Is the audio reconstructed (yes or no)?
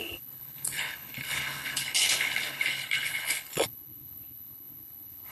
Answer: yes